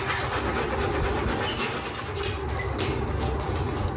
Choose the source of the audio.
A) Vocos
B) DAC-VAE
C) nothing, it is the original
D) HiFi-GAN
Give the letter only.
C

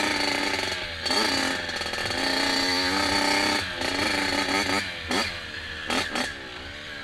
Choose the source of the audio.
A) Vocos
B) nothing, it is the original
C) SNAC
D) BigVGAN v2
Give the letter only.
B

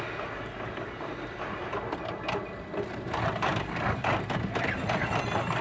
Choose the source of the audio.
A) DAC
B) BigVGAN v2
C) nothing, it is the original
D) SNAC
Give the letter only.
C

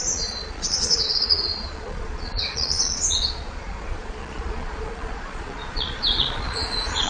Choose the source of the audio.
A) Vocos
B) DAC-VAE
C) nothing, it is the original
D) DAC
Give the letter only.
A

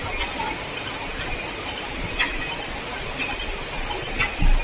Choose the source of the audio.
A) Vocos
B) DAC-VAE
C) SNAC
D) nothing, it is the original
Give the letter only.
D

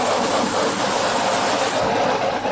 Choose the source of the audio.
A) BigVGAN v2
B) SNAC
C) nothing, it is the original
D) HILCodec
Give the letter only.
C